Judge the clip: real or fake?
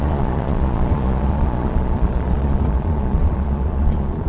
fake